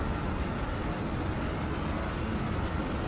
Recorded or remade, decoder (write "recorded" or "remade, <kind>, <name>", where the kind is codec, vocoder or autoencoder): recorded